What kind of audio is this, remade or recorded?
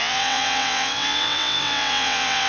remade